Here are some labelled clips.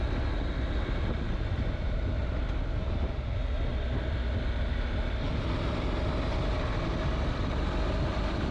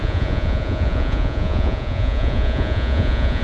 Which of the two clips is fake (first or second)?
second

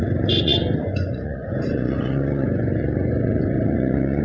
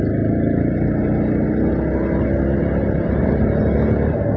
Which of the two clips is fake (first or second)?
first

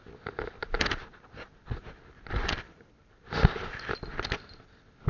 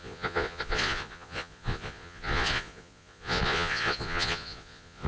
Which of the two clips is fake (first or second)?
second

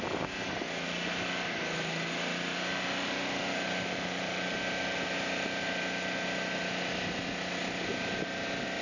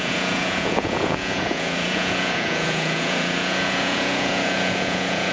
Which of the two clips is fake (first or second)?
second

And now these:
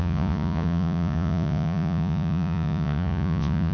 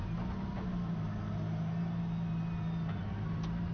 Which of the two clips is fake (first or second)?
first